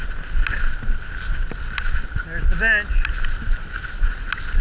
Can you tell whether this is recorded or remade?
recorded